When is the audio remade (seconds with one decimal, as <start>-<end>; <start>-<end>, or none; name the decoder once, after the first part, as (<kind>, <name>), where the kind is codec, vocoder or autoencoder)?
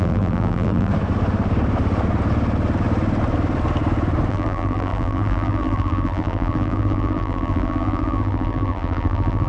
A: 0.0-0.9 (vocoder, BigVGAN v2); 4.3-9.5